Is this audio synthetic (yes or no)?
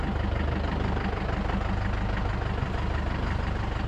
no